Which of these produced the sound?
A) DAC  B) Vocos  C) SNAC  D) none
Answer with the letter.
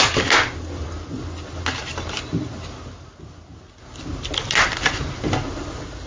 D